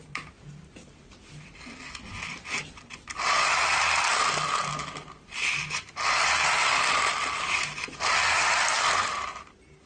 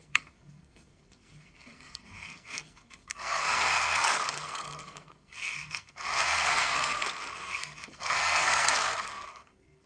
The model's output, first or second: second